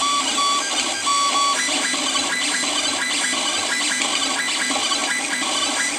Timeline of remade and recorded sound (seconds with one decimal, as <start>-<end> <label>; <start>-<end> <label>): 0.0-6.0 recorded